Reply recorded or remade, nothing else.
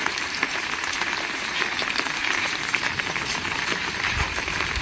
remade